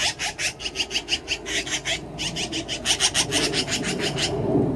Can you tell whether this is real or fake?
real